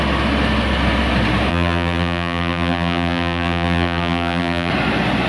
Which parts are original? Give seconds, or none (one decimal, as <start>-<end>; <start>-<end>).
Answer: 0.0-1.5; 4.7-5.3